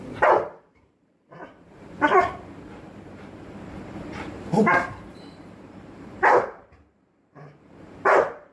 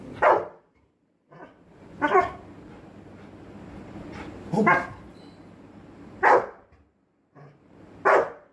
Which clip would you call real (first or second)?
second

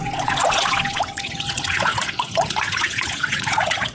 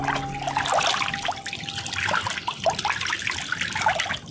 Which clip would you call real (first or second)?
second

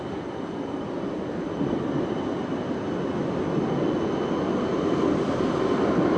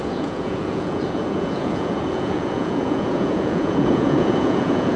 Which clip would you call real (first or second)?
first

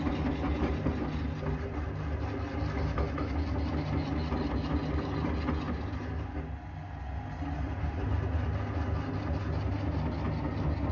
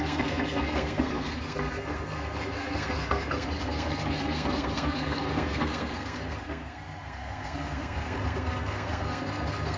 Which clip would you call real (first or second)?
first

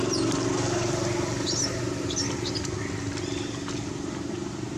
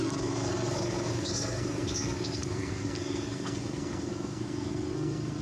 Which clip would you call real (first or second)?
first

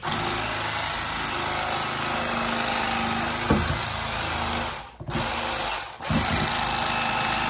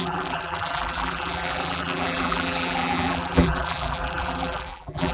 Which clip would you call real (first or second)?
first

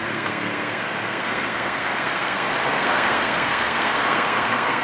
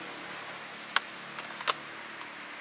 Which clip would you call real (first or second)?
second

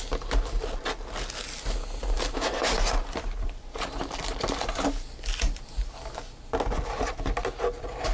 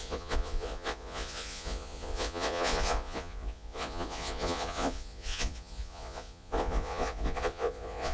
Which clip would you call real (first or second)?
first